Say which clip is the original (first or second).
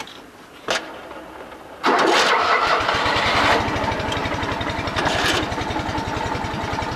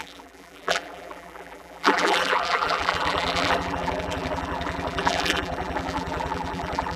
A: first